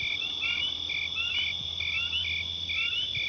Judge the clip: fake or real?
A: real